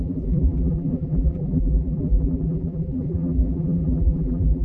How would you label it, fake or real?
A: fake